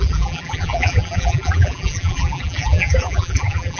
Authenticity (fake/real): fake